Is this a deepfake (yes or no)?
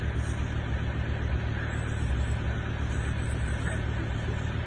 no